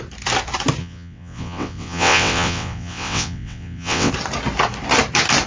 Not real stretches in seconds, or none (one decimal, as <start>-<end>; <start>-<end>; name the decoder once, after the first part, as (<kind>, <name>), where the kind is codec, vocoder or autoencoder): 0.8-4.1 (vocoder, WaveNeXt)